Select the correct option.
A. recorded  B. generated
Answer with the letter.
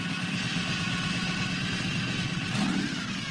A